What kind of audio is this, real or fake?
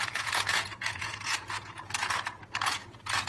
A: fake